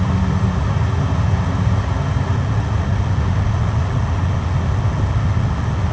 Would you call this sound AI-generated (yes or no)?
no